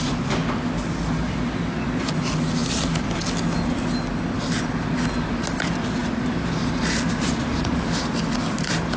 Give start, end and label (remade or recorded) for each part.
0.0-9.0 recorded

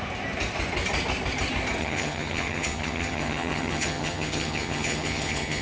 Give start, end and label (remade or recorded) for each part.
0.0-1.8 recorded; 1.8-5.6 remade

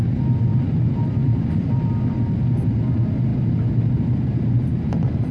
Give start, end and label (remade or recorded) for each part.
0.0-0.5 recorded; 0.5-2.2 remade; 2.2-3.3 recorded; 3.3-4.7 remade; 4.7-5.3 recorded

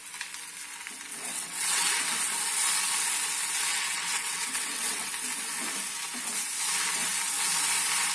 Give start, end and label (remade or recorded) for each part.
0.0-1.1 recorded; 1.1-2.0 remade; 2.0-3.7 recorded; 3.7-5.1 remade; 5.1-8.1 recorded

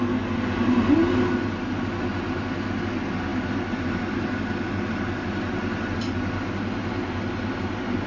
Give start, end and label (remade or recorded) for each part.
0.0-8.1 recorded

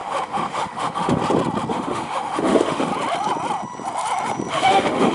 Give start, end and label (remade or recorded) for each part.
0.0-1.2 remade; 1.2-1.7 recorded; 1.7-2.9 remade; 2.9-4.5 recorded; 4.5-5.1 remade

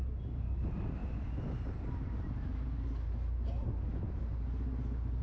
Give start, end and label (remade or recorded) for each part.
0.0-5.2 recorded

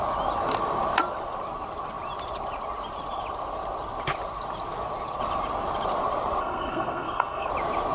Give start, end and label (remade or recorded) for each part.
0.0-6.4 recorded; 6.4-7.5 remade; 7.5-7.9 recorded